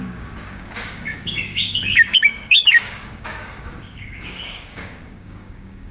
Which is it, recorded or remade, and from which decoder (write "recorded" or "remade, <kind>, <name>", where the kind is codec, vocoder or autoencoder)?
remade, codec, DAC